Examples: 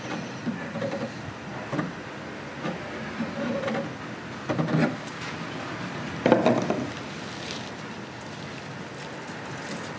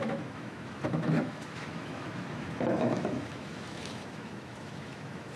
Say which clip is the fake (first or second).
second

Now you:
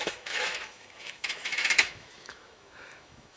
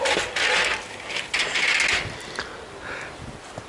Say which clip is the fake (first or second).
first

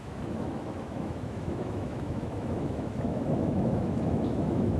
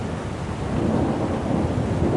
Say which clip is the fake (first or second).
first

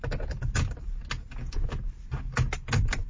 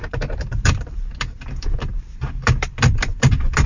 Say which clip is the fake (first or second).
second